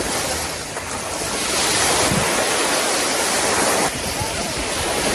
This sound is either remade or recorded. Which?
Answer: recorded